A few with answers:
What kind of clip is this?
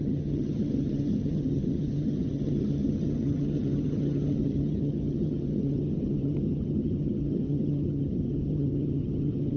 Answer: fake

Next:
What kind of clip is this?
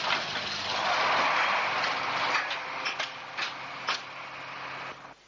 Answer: real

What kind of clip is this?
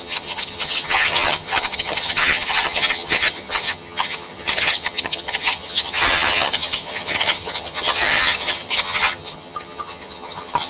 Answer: fake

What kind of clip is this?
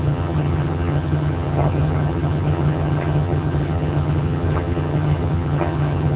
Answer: fake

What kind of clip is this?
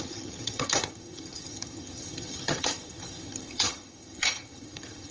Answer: fake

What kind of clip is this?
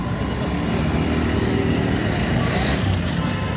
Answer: real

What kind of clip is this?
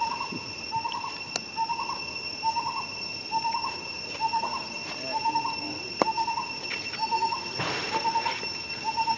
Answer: real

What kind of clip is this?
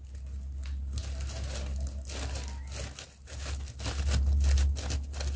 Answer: real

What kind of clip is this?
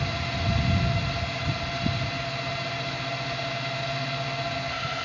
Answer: real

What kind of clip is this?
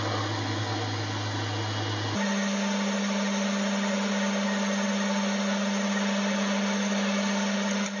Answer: real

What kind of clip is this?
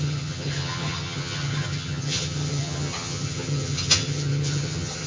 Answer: fake